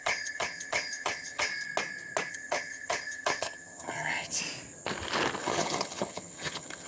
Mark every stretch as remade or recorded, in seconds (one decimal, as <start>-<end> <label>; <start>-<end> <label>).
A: 0.0-1.5 remade; 1.5-2.3 recorded; 2.3-4.4 remade; 4.4-5.4 recorded; 5.4-6.9 remade